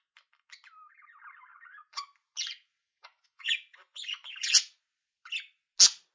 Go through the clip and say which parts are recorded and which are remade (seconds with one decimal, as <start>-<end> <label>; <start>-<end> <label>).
0.0-1.5 recorded; 1.5-2.0 remade; 2.0-2.7 recorded; 2.7-4.5 remade; 4.5-6.1 recorded